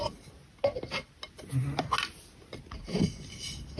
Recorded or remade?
recorded